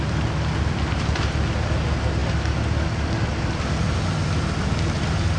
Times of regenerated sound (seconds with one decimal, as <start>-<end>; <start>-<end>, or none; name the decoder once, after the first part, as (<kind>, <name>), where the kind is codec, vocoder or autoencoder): none